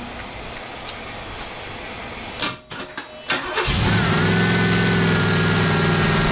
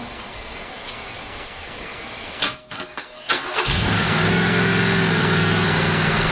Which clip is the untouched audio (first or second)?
first